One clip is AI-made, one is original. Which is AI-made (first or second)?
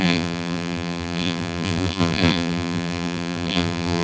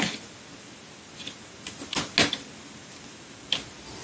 first